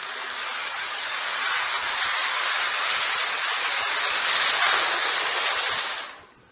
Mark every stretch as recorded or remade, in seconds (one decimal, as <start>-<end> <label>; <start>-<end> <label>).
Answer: 0.0-0.6 recorded; 0.6-1.1 remade; 1.1-6.5 recorded